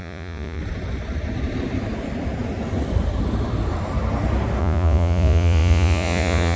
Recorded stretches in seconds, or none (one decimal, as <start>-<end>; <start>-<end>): 0.6-4.6